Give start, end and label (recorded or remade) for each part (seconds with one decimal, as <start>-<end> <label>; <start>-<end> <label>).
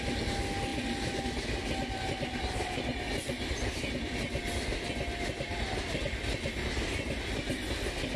0.0-8.2 recorded